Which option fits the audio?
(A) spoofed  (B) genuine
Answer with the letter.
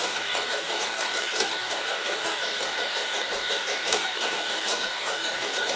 A